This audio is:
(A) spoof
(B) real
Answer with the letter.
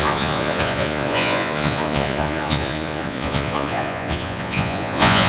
A